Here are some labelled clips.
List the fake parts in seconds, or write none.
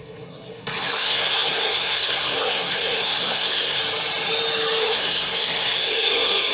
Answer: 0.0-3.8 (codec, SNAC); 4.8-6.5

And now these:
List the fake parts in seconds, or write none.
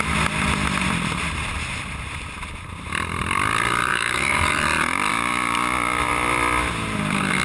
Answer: 3.9-4.4 (autoencoder, DAC-VAE)